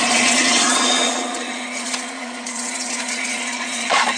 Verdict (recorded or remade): remade